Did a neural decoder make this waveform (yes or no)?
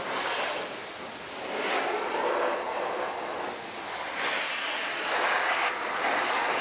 no